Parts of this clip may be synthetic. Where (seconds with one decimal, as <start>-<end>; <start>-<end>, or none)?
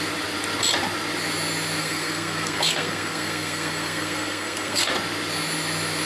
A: 1.8-4.9